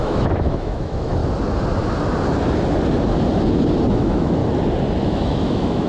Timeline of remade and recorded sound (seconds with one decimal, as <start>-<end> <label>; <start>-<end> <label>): 0.0-1.2 remade; 1.2-3.9 recorded; 3.9-4.4 remade; 4.4-5.0 recorded; 5.0-5.9 remade